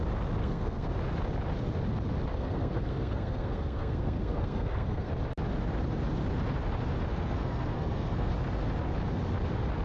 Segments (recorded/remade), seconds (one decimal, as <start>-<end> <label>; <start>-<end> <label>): 0.0-0.4 recorded; 0.4-0.9 remade; 0.9-2.3 recorded; 2.3-5.1 remade; 5.1-7.1 recorded; 7.1-8.3 remade; 8.3-9.8 recorded